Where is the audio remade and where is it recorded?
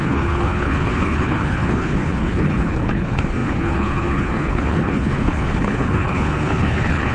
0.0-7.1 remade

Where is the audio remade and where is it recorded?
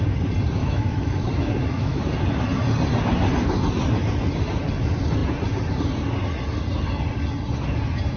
0.0-0.6 recorded; 0.6-2.0 remade; 2.0-8.2 recorded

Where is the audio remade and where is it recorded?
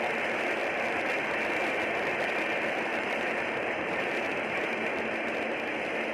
0.0-2.9 recorded; 2.9-4.9 remade; 4.9-6.1 recorded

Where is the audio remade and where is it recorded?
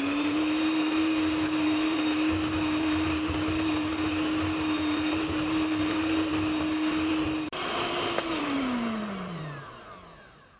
0.0-6.3 remade; 6.3-7.7 recorded; 7.7-10.6 remade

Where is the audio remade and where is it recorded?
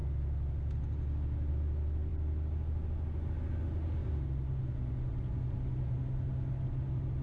0.0-7.2 recorded